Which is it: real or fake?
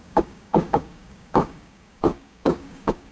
fake